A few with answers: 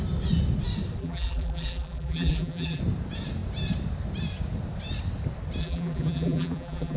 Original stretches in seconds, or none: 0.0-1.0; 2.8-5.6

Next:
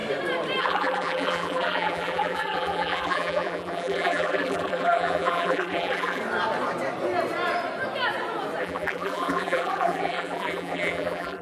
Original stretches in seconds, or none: 0.0-0.6; 6.2-8.6